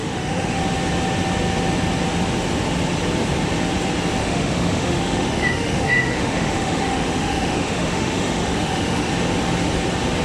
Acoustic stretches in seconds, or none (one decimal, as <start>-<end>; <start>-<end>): 0.6-4.2; 9.1-10.2